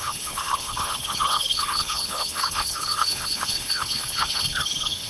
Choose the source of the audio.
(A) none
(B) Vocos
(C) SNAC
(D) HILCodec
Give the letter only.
D